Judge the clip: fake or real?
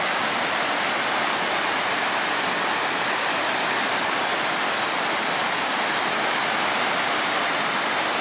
real